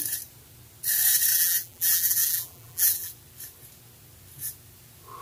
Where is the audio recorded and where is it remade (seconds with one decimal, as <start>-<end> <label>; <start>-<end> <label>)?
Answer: 0.0-1.3 recorded; 1.3-3.1 remade; 3.1-5.2 recorded